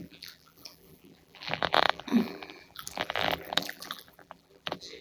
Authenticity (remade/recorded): remade